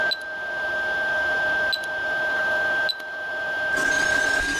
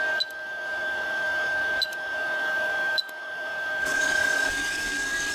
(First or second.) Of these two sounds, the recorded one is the first